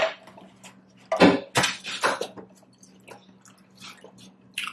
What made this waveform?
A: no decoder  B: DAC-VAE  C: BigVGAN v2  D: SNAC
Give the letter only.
A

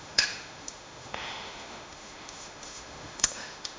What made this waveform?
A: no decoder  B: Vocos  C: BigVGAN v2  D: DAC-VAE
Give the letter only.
D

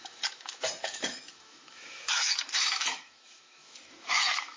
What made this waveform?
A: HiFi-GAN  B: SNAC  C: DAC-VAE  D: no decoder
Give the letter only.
C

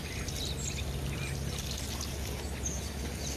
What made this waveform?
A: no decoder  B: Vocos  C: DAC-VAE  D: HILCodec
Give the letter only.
A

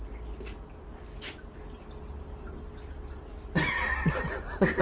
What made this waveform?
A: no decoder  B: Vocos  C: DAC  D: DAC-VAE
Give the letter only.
A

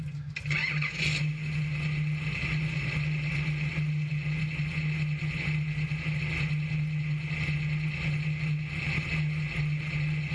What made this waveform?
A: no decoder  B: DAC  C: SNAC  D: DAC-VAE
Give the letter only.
A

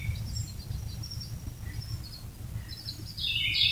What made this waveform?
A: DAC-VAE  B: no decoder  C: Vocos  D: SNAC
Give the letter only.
B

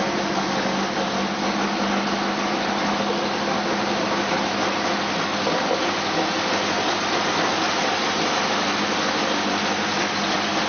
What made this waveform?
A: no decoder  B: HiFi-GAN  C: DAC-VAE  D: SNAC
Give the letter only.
A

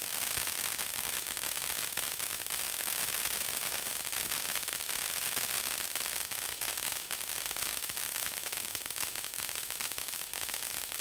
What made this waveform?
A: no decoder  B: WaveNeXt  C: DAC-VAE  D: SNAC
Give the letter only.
C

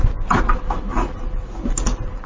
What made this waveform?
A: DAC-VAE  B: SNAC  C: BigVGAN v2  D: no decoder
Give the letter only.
D